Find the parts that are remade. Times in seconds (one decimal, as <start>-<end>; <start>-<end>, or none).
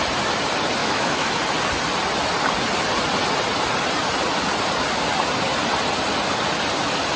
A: 0.8-1.3